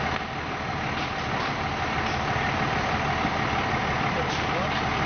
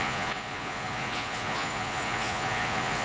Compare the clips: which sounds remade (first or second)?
second